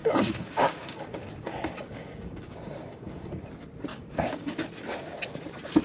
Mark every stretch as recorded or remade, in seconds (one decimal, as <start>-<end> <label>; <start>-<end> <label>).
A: 0.0-3.5 remade; 3.5-3.9 recorded; 3.9-4.5 remade; 4.5-5.8 recorded